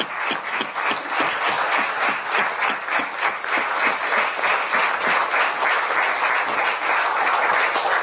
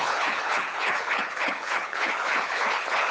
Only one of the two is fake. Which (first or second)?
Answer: second